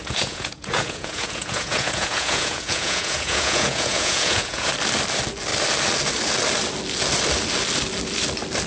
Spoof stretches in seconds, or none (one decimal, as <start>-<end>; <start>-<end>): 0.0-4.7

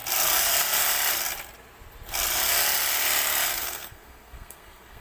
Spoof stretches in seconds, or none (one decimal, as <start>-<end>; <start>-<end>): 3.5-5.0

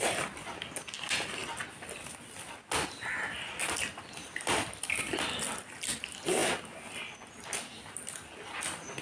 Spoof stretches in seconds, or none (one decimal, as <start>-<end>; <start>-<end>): none